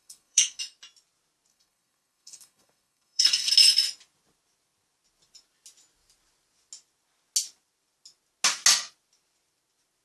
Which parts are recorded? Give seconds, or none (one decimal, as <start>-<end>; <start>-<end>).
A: 0.6-1.5; 3.5-10.0